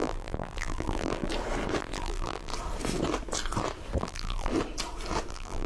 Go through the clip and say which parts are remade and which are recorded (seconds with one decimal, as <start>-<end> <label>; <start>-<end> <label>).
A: 0.0-1.3 remade; 1.3-1.8 recorded; 1.8-2.5 remade; 2.5-4.0 recorded; 4.0-4.5 remade; 4.5-5.3 recorded; 5.3-5.7 remade